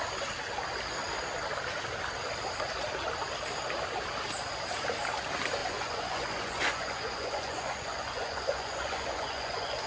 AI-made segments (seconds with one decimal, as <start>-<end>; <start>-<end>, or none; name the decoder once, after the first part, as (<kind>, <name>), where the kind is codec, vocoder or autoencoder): 5.6-9.9 (vocoder, Vocos)